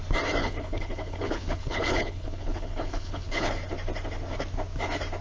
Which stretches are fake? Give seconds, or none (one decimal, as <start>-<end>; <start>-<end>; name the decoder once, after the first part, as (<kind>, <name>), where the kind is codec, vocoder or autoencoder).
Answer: 0.4-3.5 (codec, HILCodec)